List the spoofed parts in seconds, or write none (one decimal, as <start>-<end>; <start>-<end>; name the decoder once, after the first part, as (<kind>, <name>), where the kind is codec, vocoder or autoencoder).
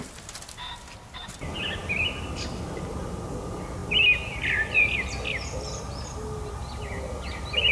none